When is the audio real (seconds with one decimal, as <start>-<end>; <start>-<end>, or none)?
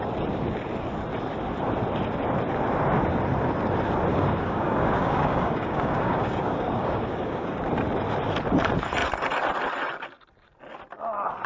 0.0-4.1; 7.6-11.5